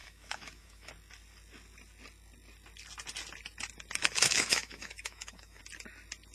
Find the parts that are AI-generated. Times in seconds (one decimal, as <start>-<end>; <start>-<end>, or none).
0.0-0.9; 4.0-5.6